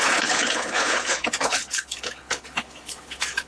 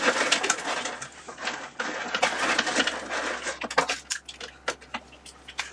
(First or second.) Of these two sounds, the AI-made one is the first